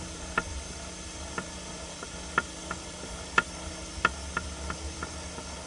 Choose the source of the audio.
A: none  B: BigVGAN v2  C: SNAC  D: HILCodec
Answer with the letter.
B